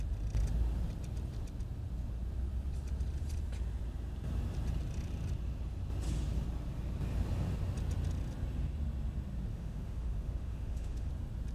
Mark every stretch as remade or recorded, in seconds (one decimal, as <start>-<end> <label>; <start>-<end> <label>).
0.0-9.5 recorded; 9.5-11.1 remade; 11.1-11.5 recorded